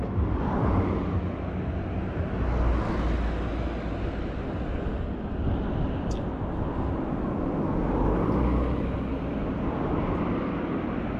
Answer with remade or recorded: recorded